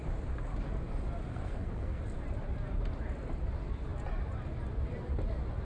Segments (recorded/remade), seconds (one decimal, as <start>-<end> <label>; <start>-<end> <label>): 0.0-1.3 recorded; 1.3-2.0 remade; 2.0-5.6 recorded

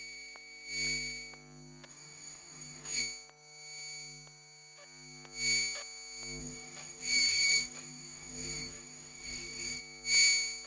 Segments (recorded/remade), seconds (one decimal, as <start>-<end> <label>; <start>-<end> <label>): 0.0-1.9 recorded; 1.9-3.0 remade; 3.0-6.4 recorded; 6.4-9.8 remade; 9.8-10.7 recorded

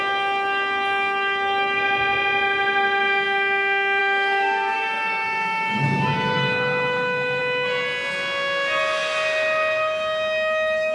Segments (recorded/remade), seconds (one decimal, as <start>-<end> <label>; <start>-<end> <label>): 0.0-4.0 recorded; 4.0-7.4 remade; 7.4-10.9 recorded

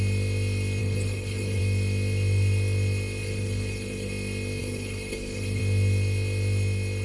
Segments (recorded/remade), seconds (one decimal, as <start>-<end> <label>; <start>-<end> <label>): 0.0-0.8 recorded; 0.8-1.6 remade; 1.6-3.2 recorded; 3.2-4.1 remade; 4.1-4.6 recorded; 4.6-5.6 remade; 5.6-7.0 recorded

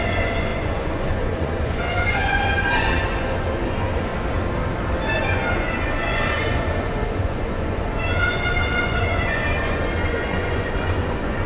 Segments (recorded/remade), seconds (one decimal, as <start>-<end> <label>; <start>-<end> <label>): 0.0-4.1 remade; 4.1-5.2 recorded; 5.2-11.5 remade

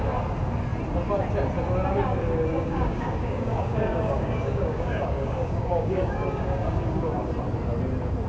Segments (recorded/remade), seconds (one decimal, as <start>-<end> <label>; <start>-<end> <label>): 0.0-2.5 recorded; 2.5-7.3 remade; 7.3-8.3 recorded

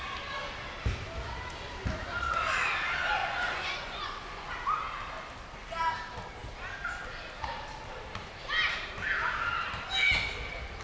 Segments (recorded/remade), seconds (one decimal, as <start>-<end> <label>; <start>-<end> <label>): 0.0-3.2 recorded; 3.2-4.5 remade; 4.5-10.8 recorded